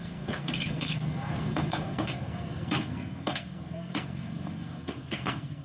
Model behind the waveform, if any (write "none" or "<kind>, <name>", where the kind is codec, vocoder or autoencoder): codec, SNAC